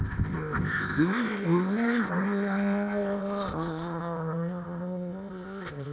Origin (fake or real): fake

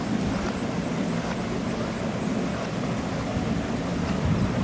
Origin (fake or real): real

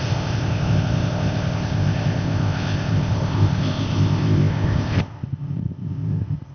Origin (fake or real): fake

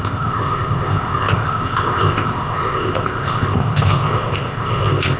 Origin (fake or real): fake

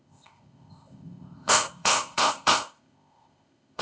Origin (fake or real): fake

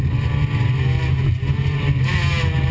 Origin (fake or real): real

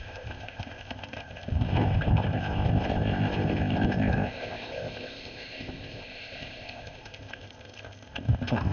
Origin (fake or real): fake